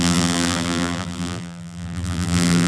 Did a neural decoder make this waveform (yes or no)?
yes